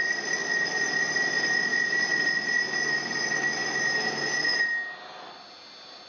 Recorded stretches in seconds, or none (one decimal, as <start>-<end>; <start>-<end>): 0.0-6.1